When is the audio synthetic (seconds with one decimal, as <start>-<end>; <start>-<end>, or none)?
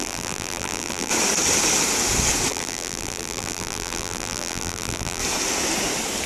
0.0-1.1; 2.5-5.2